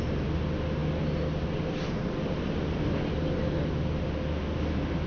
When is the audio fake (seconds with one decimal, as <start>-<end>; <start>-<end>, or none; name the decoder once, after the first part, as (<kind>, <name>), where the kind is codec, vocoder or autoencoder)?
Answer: none